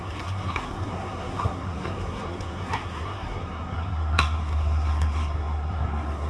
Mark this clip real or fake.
fake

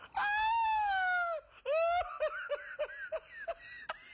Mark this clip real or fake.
real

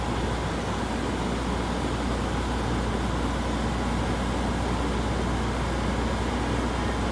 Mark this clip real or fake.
real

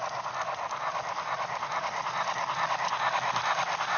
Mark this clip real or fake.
real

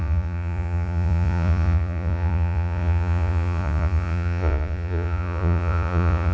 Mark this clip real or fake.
fake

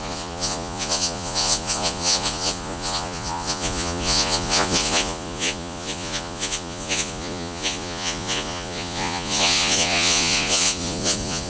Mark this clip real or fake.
fake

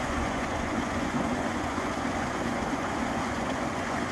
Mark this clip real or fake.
fake